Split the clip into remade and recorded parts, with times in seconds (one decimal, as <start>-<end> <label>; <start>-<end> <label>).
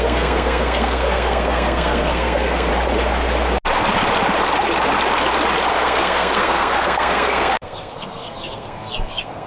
0.0-2.7 remade; 2.7-5.7 recorded; 5.7-9.5 remade